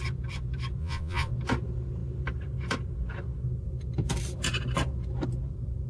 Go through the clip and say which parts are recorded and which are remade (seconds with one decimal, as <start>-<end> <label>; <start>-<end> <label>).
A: 0.0-0.8 recorded; 0.8-1.3 remade; 1.3-5.9 recorded